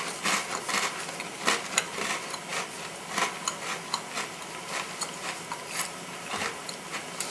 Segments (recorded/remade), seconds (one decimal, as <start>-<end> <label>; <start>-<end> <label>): 0.0-7.3 recorded